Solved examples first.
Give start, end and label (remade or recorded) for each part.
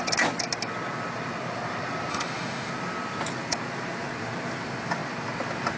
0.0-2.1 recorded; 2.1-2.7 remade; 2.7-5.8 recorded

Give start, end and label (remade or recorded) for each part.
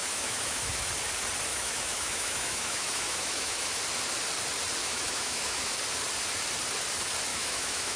0.0-0.9 remade; 0.9-1.5 recorded; 1.5-3.8 remade; 3.8-4.8 recorded; 4.8-5.7 remade; 5.7-7.3 recorded; 7.3-8.0 remade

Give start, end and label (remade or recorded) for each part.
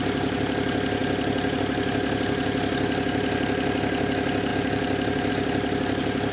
0.0-6.3 recorded